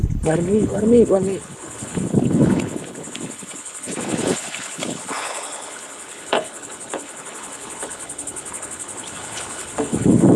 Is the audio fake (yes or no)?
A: yes